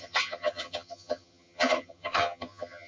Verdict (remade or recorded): remade